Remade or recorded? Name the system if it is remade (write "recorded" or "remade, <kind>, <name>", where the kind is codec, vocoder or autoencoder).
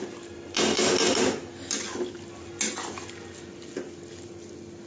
recorded